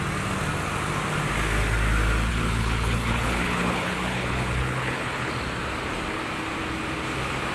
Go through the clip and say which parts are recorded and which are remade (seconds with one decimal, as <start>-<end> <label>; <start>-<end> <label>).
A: 0.0-2.3 recorded; 2.3-5.3 remade; 5.3-7.5 recorded